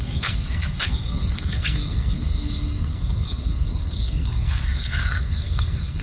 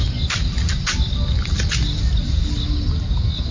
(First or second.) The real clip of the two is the second